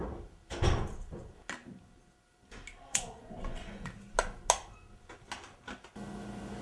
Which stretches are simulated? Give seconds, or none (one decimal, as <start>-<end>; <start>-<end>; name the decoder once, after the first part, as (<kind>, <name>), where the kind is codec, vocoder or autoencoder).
2.9-3.9 (vocoder, Vocos)

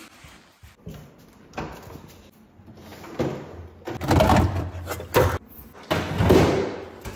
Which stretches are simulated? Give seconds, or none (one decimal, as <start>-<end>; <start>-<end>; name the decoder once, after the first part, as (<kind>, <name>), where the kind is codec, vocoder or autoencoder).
none

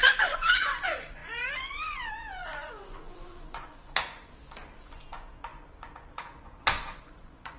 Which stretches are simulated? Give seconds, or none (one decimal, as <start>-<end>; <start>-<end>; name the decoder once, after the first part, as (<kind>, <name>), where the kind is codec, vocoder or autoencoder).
0.0-7.6 (vocoder, Vocos)

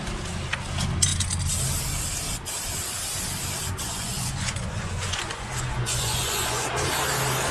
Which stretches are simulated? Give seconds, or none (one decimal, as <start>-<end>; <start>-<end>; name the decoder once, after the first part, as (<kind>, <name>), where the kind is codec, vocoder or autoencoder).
3.8-6.7 (vocoder, Vocos)

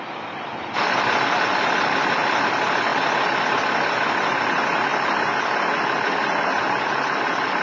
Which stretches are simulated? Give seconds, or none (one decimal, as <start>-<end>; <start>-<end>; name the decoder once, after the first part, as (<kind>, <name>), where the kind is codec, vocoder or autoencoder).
none

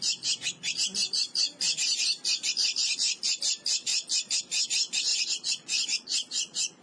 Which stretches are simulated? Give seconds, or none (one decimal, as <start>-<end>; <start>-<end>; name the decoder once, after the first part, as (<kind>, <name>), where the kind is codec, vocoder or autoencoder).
5.1-6.8 (vocoder, Vocos)